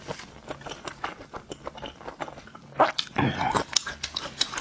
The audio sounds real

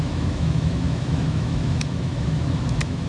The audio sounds fake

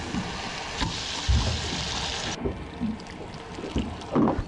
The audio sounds real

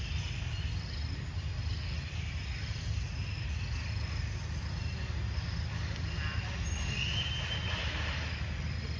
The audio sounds real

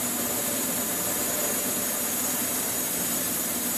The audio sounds real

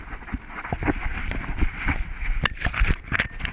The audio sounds real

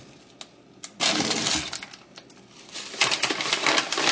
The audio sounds real